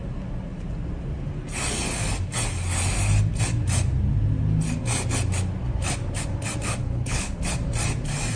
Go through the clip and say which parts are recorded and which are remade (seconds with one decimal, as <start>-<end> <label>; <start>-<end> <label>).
0.0-6.8 recorded; 6.8-7.4 remade; 7.4-8.4 recorded